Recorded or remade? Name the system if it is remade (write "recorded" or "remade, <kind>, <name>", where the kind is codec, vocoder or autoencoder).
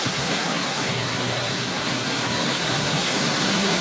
remade, codec, SNAC